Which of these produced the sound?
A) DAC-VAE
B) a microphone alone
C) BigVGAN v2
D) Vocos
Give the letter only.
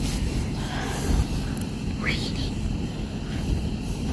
C